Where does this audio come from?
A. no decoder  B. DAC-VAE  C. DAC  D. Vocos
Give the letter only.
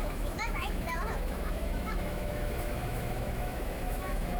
B